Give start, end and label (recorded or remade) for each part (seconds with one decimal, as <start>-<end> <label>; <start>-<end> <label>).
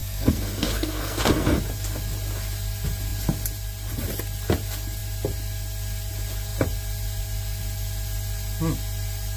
0.0-1.6 remade; 1.6-9.4 recorded